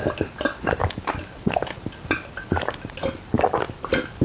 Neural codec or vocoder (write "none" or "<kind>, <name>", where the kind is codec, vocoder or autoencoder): none